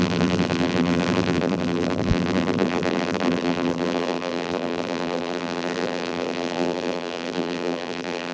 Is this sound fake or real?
fake